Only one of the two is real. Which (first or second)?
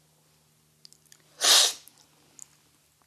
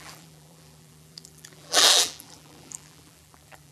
first